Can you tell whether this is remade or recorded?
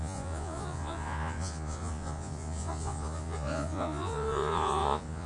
remade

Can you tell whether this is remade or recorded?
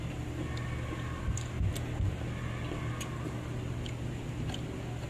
recorded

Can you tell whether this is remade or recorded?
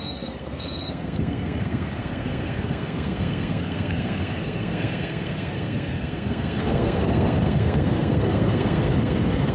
remade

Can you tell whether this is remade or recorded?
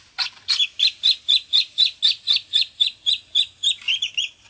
recorded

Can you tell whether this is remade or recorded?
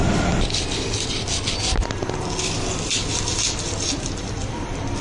recorded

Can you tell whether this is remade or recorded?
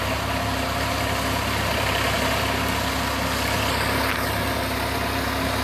recorded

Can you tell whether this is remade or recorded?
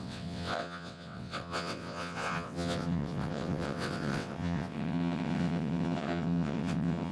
remade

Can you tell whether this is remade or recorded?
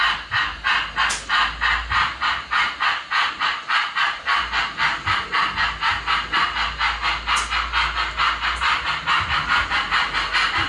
recorded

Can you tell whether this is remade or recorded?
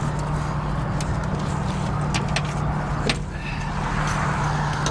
recorded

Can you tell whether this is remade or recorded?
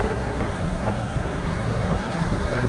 remade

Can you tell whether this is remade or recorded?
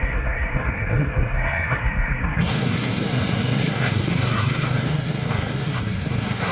remade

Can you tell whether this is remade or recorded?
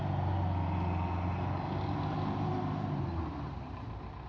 recorded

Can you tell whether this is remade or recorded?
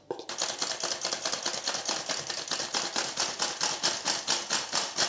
recorded